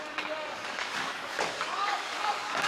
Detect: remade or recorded remade